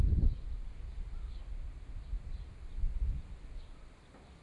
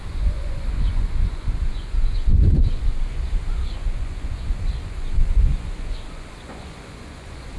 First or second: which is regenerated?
second